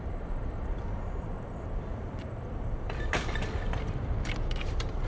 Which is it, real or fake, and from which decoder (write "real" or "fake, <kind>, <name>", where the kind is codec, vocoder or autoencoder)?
fake, vocoder, BigVGAN v2